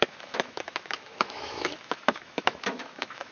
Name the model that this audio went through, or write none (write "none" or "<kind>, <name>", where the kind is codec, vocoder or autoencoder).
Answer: autoencoder, DAC-VAE